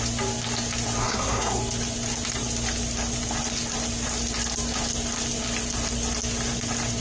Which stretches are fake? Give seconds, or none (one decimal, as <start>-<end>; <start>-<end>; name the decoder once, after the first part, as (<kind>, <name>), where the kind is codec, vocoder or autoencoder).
1.0-1.6 (codec, SNAC)